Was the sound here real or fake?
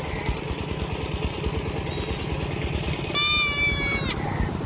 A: real